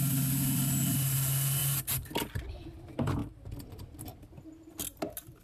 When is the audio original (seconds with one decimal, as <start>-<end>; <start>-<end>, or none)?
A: 0.0-5.4